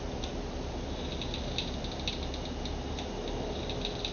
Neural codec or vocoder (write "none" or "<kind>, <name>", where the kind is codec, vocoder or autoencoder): none